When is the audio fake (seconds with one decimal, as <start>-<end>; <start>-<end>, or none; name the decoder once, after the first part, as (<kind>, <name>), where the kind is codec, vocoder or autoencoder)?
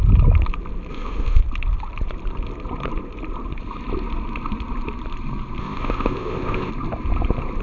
0.9-1.4 (codec, ZipCodec); 5.6-6.7